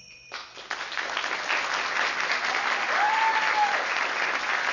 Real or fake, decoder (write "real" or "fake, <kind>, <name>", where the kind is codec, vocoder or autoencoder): real